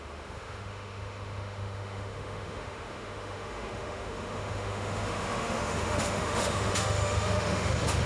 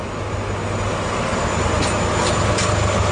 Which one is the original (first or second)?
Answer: second